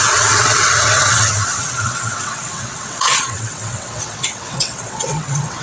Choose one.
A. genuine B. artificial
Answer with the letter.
B